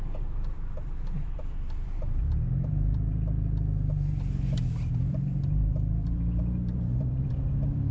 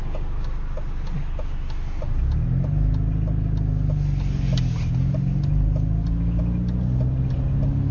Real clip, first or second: second